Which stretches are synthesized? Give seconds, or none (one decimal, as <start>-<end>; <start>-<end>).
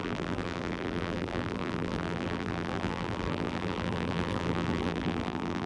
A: 0.0-5.7